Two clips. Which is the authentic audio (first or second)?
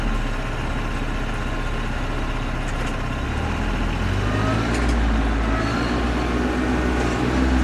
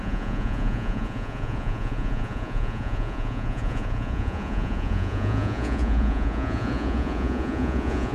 first